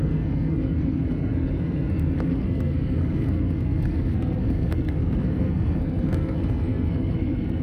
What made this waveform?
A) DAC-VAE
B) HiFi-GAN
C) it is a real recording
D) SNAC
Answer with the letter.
D